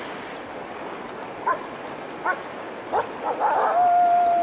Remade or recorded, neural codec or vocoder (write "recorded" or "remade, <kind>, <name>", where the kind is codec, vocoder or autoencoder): recorded